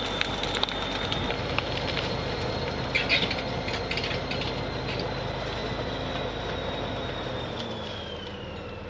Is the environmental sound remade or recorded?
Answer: recorded